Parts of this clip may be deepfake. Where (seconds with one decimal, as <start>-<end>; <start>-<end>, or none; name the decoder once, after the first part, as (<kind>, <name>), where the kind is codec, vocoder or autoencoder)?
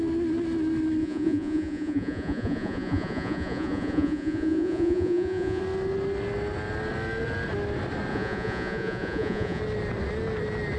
1.0-5.6 (vocoder, Vocos); 8.1-9.6